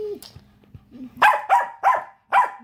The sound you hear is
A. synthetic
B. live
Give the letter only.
B